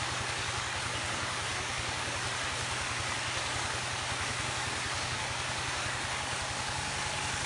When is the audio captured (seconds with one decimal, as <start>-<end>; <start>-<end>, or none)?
none